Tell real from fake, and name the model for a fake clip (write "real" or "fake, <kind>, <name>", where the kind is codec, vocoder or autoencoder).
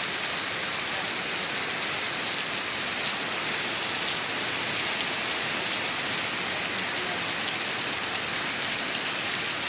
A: real